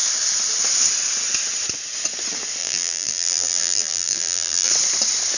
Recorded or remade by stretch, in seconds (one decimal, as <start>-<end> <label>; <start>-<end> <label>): 0.0-2.6 recorded; 2.6-4.7 remade; 4.7-5.4 recorded